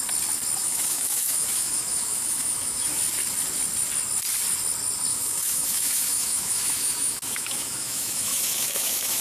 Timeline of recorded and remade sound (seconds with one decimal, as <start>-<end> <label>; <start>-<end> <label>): 0.0-0.6 recorded; 0.6-2.9 remade; 2.9-5.1 recorded; 5.1-9.2 remade